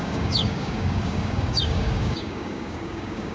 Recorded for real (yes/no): no